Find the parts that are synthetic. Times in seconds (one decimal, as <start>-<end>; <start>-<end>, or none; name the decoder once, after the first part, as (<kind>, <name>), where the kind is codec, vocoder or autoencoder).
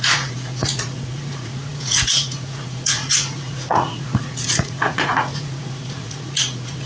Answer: 0.0-6.9 (vocoder, Vocos)